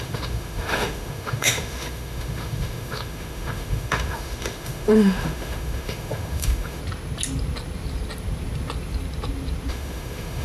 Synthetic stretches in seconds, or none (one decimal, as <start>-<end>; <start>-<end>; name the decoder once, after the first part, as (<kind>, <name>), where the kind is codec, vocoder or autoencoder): 0.0-6.8 (autoencoder, DAC-VAE); 9.7-10.4